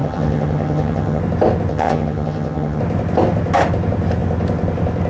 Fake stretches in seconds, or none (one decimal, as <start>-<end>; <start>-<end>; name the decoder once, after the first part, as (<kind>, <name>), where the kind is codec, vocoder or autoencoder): 0.0-1.2 (vocoder, HiFi-GAN); 1.7-2.8